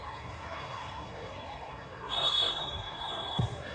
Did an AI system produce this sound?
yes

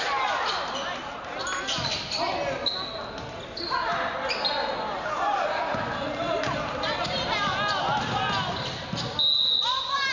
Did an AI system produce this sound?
no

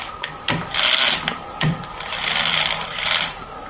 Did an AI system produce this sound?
no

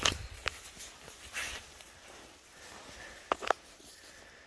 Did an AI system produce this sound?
no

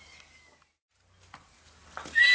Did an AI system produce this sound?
no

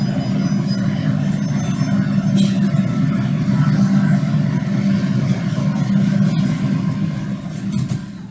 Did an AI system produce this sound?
no